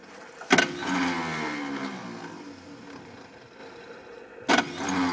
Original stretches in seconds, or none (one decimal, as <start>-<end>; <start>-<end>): 0.0-5.1